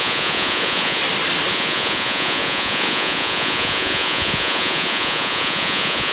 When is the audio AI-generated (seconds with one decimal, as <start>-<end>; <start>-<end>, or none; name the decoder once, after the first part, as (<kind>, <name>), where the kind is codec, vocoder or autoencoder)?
0.0-1.0 (vocoder, Vocos); 1.5-6.1